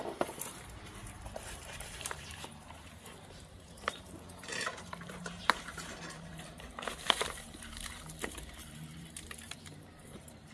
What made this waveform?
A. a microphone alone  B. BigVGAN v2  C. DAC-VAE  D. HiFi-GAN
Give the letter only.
B